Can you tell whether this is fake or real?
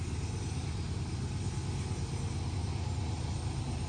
real